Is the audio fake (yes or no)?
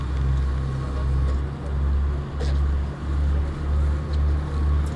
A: no